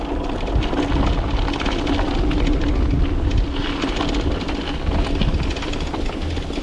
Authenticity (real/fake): real